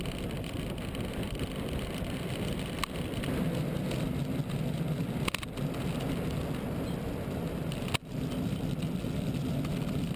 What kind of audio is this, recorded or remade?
recorded